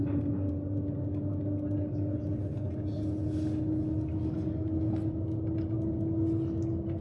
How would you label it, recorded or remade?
recorded